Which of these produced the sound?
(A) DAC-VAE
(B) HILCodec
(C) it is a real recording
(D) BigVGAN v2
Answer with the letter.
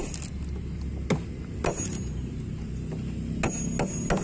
C